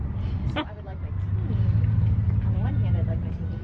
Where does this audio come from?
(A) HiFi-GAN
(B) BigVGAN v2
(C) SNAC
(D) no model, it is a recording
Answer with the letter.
D